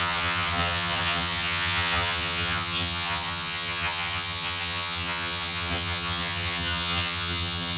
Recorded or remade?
remade